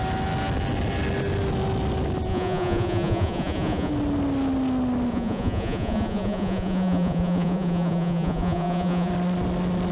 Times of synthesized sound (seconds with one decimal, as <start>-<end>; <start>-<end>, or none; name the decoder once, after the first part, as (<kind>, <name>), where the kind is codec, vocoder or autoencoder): 2.3-3.9 (vocoder, Vocos); 5.1-9.1